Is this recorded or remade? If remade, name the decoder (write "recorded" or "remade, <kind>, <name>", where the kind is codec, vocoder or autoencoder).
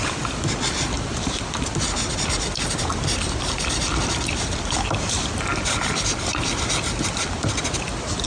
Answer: recorded